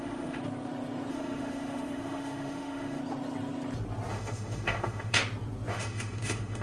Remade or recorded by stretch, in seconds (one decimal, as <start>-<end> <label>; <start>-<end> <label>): 0.0-0.4 remade; 0.4-1.1 recorded; 1.1-3.0 remade; 3.0-4.1 recorded; 4.1-5.2 remade; 5.2-5.7 recorded; 5.7-6.6 remade